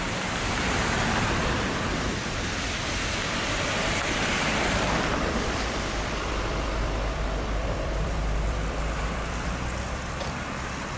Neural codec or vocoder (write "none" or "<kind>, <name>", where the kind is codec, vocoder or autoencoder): vocoder, BigVGAN v2